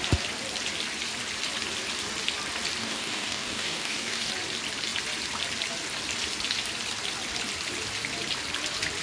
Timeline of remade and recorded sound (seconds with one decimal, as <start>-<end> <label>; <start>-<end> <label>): 0.0-2.8 recorded; 2.8-4.3 remade; 4.3-9.0 recorded